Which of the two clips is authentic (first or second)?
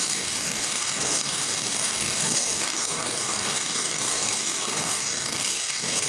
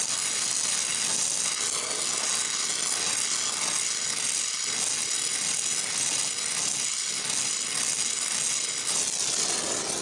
second